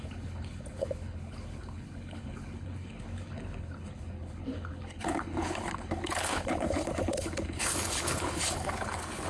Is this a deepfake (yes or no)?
yes